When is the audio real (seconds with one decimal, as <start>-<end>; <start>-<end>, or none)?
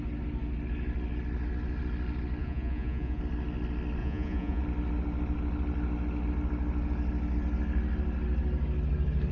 0.0-2.4; 3.2-4.0; 4.6-9.3